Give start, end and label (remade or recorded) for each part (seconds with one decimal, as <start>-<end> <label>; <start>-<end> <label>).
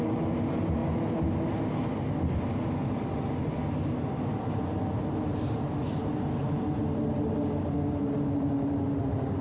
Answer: 0.0-9.4 recorded